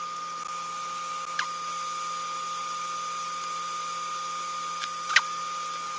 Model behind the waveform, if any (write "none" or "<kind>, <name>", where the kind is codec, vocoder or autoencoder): none